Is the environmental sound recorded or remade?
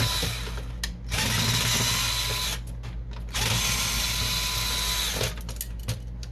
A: recorded